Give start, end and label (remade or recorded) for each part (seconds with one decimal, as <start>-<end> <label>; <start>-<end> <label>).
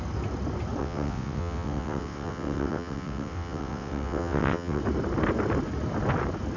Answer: 0.0-0.8 recorded; 0.8-4.8 remade; 4.8-6.6 recorded